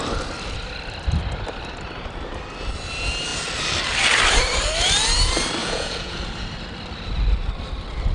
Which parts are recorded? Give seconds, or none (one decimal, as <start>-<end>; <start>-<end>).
0.0-5.6; 6.2-8.1